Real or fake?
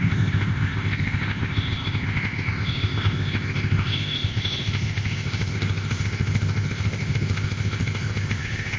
fake